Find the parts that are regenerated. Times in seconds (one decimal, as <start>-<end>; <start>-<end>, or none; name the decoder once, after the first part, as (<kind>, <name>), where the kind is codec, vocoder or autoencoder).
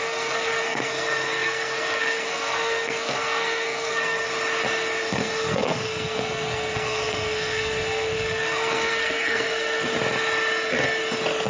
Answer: 0.0-4.3 (codec, SNAC); 5.1-9.9